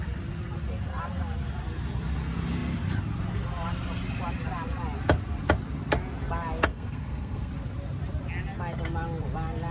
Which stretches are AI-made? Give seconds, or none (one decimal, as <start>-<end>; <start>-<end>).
6.7-7.5